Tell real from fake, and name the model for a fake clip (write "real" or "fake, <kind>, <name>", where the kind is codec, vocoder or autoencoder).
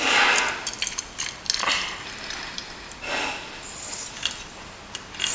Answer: real